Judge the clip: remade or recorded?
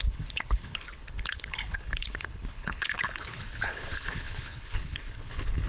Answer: remade